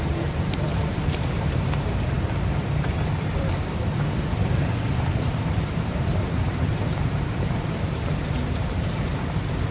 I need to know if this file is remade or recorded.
remade